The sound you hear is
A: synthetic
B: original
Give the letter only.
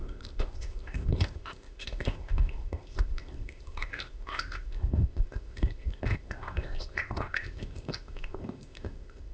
A